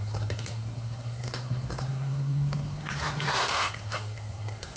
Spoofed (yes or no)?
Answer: yes